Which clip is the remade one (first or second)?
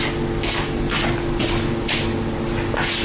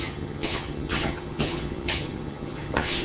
second